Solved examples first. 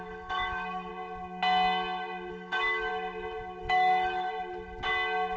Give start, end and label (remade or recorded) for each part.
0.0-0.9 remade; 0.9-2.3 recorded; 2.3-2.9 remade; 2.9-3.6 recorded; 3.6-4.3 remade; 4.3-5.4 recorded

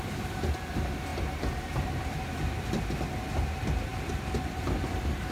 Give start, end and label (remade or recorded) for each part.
0.0-5.3 recorded

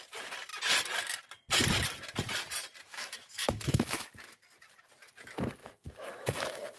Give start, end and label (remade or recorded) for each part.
0.0-2.9 recorded; 2.9-4.1 remade; 4.1-5.6 recorded; 5.6-6.8 remade

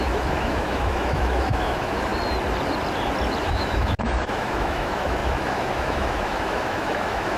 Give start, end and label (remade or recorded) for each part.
0.0-2.1 remade; 2.1-3.4 recorded; 3.4-7.4 remade

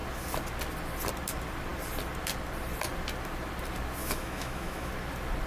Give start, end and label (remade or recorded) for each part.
0.0-4.0 recorded; 4.0-4.9 remade; 4.9-5.5 recorded

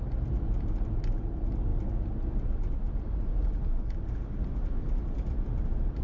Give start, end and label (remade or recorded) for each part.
0.0-6.0 recorded